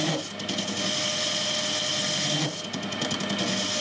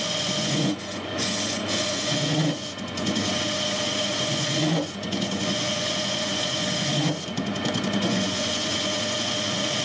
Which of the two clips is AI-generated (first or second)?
second